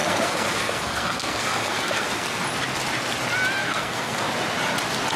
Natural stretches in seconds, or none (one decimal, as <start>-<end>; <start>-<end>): 2.4-3.6; 4.3-5.2